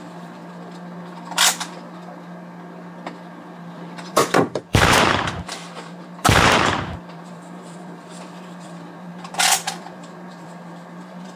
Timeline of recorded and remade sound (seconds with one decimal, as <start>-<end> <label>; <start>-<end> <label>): 0.0-0.4 remade; 0.4-3.6 recorded; 3.6-11.4 remade